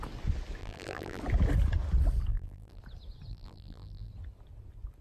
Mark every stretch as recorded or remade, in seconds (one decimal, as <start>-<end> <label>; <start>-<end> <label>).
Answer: 0.0-0.6 recorded; 0.6-1.2 remade; 1.2-2.3 recorded; 2.3-2.8 remade; 2.8-3.3 recorded; 3.3-4.1 remade; 4.1-5.0 recorded